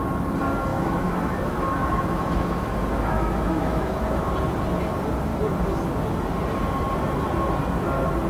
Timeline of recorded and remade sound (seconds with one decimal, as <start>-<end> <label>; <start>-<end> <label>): 0.0-0.7 recorded; 0.7-4.3 remade; 4.3-5.3 recorded; 5.3-6.0 remade; 6.0-8.3 recorded